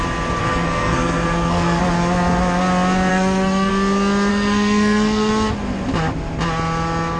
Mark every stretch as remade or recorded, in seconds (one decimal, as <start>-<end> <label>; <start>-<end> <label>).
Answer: 0.0-0.4 recorded; 0.4-1.8 remade; 1.8-3.1 recorded; 3.1-3.7 remade; 3.7-4.3 recorded; 4.3-5.3 remade; 5.3-7.2 recorded